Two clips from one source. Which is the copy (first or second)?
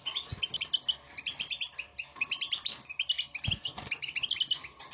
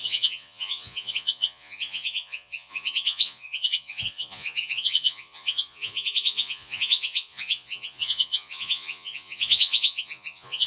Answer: second